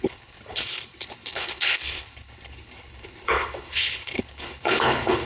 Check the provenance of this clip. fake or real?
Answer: fake